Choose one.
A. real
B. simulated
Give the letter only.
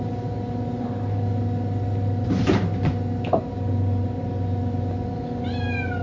A